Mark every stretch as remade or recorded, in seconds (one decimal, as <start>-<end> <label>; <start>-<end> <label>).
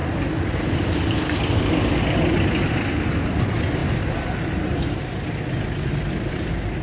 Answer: 0.0-6.8 recorded